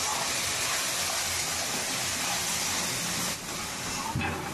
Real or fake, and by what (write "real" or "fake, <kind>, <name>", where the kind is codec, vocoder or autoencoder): real